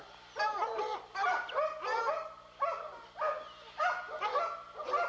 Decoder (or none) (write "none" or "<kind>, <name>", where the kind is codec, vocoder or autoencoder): none